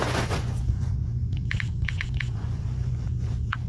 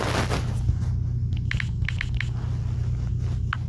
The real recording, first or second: second